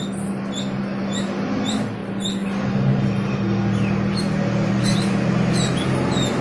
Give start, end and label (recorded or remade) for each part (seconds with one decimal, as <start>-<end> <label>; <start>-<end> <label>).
0.0-6.4 recorded